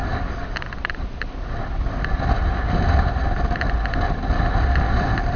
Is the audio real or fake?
real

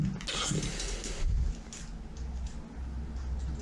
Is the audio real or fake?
real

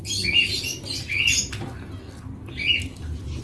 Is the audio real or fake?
real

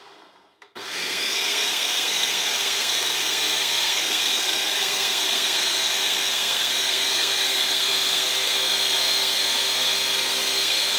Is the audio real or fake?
fake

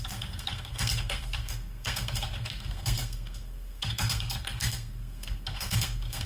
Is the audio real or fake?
fake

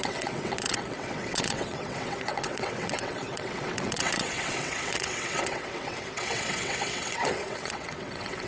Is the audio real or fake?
fake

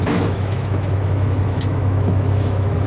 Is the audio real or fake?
fake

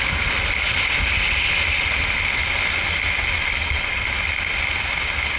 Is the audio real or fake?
real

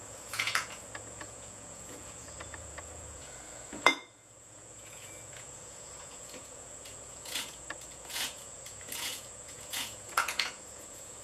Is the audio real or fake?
fake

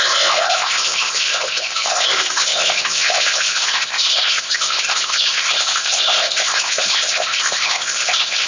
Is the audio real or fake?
fake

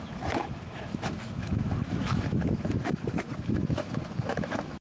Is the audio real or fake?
fake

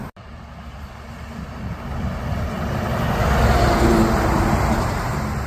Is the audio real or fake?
real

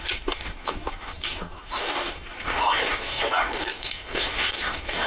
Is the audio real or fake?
fake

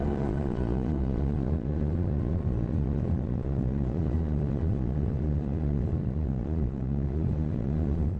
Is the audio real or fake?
fake